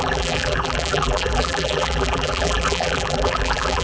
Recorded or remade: remade